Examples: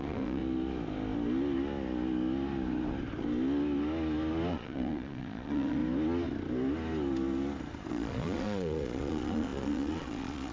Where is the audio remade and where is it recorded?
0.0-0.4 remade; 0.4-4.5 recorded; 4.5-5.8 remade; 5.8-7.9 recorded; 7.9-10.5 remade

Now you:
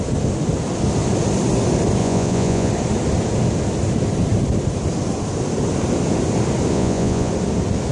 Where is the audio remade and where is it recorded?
0.0-2.0 recorded; 2.0-2.7 remade; 2.7-6.7 recorded; 6.7-7.3 remade; 7.3-7.9 recorded

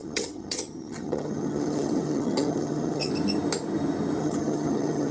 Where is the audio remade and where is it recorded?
0.0-3.1 remade; 3.1-4.2 recorded; 4.2-5.1 remade

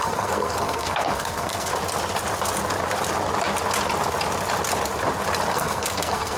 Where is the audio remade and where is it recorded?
0.0-1.7 remade; 1.7-5.5 recorded; 5.5-6.4 remade

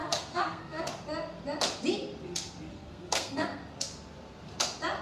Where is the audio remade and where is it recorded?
0.0-0.9 remade; 0.9-2.7 recorded; 2.7-3.6 remade; 3.6-5.0 recorded

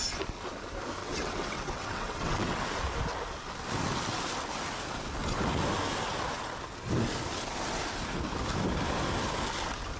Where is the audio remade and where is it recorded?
0.0-1.0 recorded; 1.0-2.6 remade; 2.6-10.0 recorded